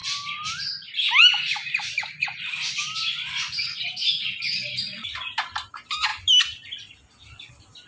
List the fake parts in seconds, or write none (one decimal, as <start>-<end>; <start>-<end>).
none